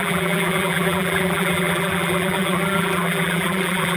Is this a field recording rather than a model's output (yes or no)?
no